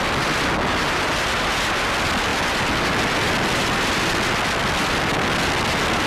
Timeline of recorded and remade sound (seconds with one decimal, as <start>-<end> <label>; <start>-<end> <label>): 0.0-6.1 recorded